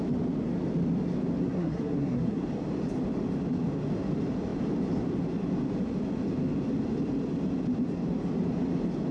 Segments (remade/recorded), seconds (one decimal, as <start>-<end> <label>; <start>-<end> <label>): 0.0-1.4 recorded; 1.4-2.4 remade; 2.4-9.1 recorded